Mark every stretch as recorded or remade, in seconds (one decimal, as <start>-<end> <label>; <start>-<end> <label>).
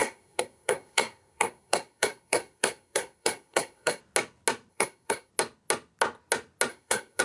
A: 0.0-4.0 remade; 4.0-4.7 recorded; 4.7-5.3 remade; 5.3-6.7 recorded; 6.7-7.2 remade